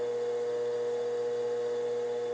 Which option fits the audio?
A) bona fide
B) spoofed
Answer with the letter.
A